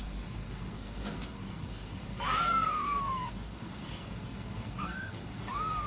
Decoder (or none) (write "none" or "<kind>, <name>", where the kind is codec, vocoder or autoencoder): codec, SNAC